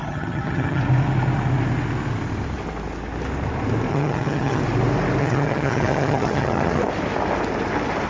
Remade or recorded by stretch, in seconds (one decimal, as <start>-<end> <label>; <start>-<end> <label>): 0.0-0.8 remade; 0.8-3.9 recorded; 3.9-4.6 remade; 4.6-5.2 recorded; 5.2-6.8 remade; 6.8-8.1 recorded